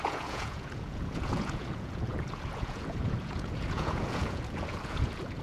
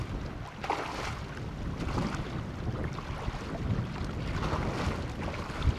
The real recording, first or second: second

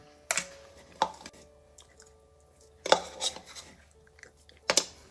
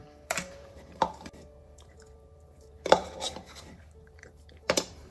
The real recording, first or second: first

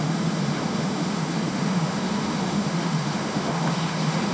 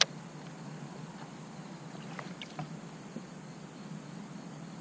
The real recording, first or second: second